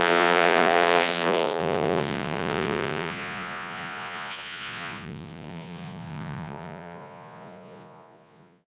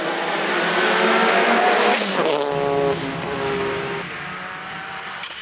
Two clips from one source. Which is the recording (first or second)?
second